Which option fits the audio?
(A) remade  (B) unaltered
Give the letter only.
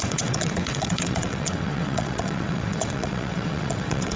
A